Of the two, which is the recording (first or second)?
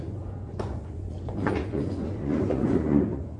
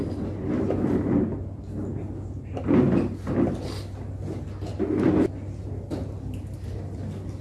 second